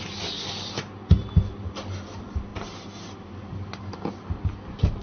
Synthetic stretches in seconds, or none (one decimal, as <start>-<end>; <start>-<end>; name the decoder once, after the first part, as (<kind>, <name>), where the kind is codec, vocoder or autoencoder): none